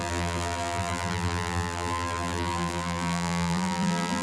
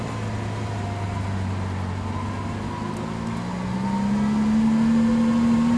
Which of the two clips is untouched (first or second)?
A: second